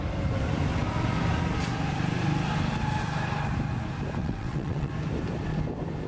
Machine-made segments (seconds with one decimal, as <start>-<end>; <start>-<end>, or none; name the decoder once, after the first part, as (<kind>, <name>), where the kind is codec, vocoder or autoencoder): 4.2-4.9 (vocoder, WaveNeXt)